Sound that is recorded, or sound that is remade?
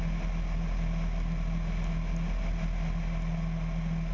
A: recorded